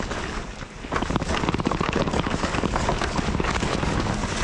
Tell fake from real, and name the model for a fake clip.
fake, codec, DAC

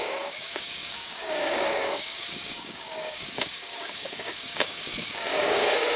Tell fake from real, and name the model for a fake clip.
fake, codec, DAC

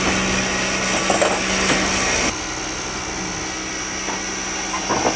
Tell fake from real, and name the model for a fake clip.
real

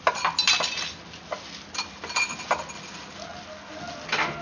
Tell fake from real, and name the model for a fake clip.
real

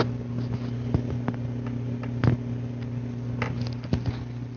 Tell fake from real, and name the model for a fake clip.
real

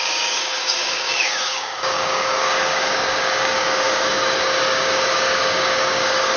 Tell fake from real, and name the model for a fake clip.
fake, codec, DAC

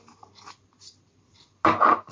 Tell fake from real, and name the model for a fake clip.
real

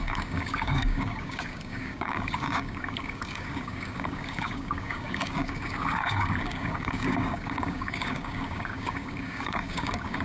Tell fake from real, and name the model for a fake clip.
fake, codec, DAC